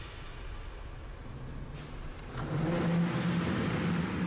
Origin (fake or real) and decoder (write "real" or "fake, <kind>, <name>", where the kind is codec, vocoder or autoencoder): real